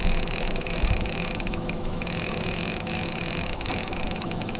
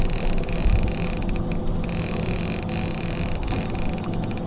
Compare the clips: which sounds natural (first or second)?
second